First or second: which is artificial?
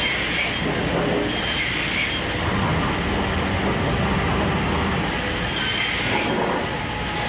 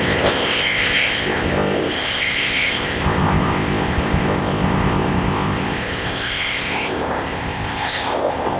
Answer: second